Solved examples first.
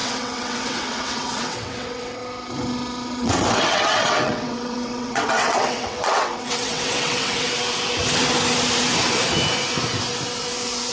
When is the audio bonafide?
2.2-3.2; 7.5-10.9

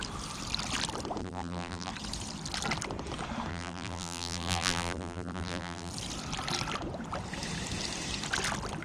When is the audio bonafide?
0.0-1.2; 1.9-3.5; 5.9-8.8

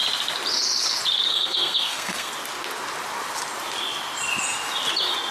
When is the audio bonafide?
0.0-1.3; 2.3-5.3

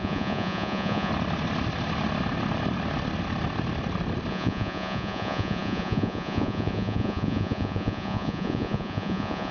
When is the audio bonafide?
1.1-4.3

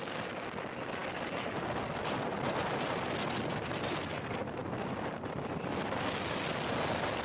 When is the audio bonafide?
0.0-7.2